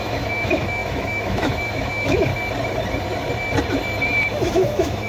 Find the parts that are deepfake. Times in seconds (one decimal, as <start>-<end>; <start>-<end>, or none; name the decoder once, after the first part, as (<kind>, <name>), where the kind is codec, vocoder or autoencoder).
0.0-2.3 (autoencoder, DAC-VAE); 4.5-5.1